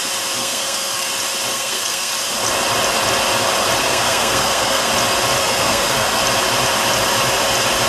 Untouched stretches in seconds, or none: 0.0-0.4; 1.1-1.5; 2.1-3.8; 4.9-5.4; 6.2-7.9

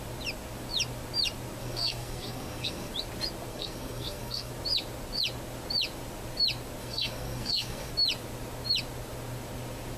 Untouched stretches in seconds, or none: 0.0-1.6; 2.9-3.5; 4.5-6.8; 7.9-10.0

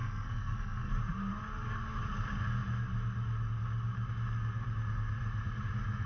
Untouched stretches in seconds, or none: 0.9-6.1